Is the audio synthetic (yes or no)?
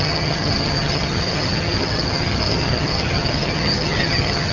yes